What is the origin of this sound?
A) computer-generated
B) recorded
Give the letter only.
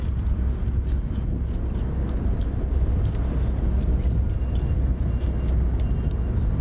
B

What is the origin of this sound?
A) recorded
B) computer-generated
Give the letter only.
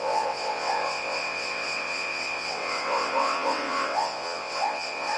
B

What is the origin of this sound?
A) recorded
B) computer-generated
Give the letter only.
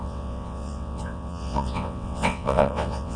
B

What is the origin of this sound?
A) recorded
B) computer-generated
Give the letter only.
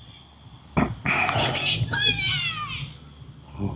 A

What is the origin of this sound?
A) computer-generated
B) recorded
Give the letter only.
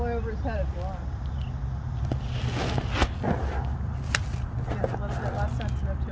B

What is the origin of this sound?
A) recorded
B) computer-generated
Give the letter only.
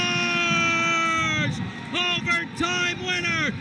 A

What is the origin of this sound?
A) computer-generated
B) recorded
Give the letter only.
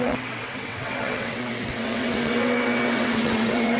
A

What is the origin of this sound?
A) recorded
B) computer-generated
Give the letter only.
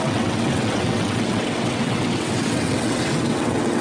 B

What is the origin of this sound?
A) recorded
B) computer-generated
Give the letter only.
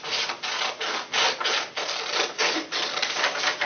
A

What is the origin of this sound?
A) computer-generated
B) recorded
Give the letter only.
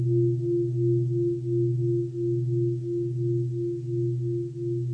B